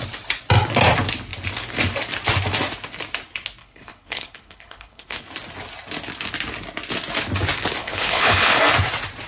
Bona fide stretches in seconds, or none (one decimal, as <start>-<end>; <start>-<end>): 0.0-3.6; 5.2-7.8; 8.6-9.3